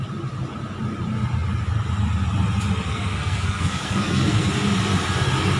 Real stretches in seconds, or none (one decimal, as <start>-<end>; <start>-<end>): 0.0-2.9; 4.5-5.6